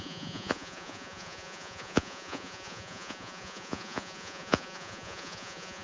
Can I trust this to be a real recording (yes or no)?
no